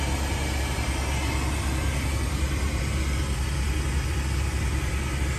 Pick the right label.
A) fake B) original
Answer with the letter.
B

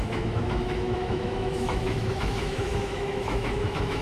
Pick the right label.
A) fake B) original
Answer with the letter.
A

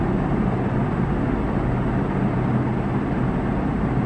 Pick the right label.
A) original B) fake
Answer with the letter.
A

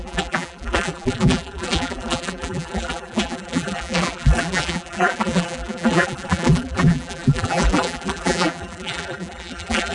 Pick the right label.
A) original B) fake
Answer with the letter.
B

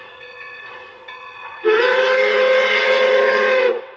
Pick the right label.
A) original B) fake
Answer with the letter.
B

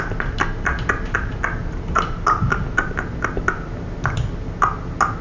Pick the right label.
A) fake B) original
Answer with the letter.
B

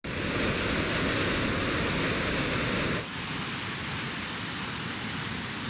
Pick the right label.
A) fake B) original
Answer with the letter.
B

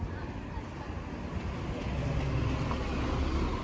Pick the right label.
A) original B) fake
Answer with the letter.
A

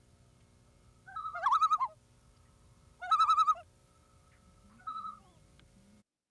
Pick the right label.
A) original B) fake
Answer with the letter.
A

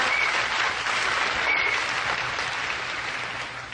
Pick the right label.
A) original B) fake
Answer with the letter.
A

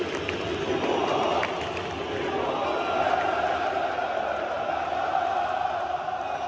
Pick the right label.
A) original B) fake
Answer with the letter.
A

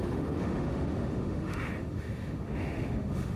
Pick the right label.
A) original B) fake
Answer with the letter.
B